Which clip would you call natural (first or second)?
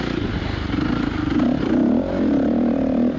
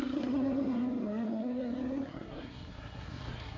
first